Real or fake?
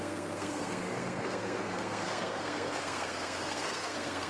fake